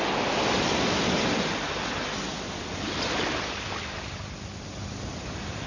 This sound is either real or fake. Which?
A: real